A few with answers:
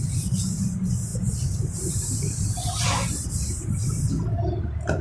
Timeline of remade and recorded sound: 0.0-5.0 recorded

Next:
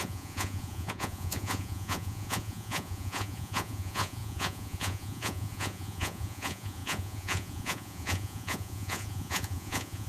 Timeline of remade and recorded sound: 0.0-10.1 remade

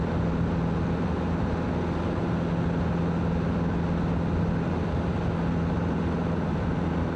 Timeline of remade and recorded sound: 0.0-5.8 recorded; 5.8-7.2 remade

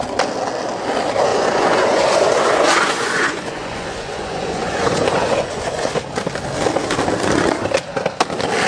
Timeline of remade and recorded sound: 0.0-1.3 recorded; 1.3-6.0 remade; 6.0-8.7 recorded

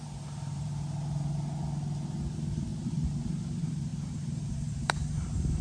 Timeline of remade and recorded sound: 0.0-0.7 remade; 0.7-2.3 recorded; 2.3-5.6 remade

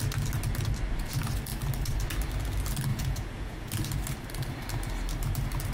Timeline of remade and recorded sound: 0.0-2.9 recorded; 2.9-3.7 remade; 3.7-5.7 recorded